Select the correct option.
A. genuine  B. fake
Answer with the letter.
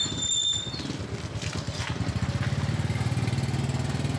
A